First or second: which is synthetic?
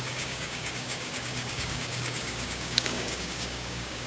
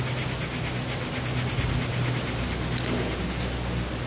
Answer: first